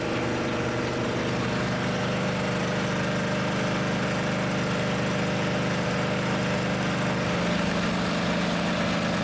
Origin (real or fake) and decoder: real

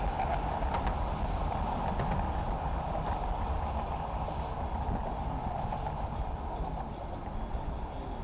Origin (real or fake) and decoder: real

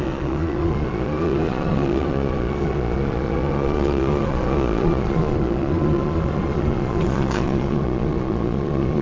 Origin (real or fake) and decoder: fake, vocoder, Vocos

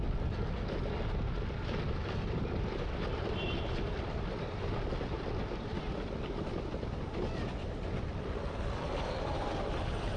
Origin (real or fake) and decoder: real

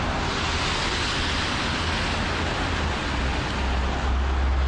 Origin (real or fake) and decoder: real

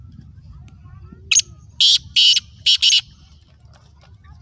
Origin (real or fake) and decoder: real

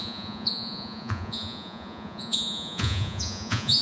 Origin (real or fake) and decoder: fake, vocoder, Vocos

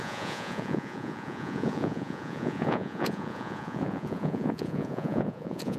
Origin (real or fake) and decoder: fake, vocoder, Vocos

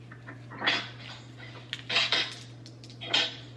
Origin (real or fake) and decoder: real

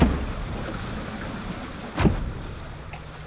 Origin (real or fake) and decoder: real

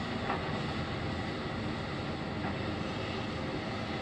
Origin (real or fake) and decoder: real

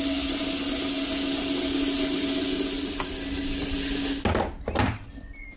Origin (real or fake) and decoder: real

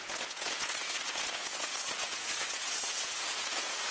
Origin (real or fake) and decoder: fake, vocoder, Vocos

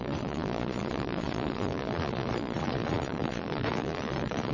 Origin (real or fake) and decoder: fake, vocoder, Vocos